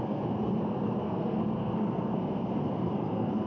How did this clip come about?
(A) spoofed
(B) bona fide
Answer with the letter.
A